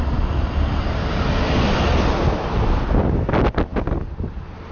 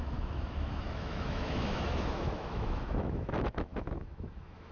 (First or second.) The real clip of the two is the first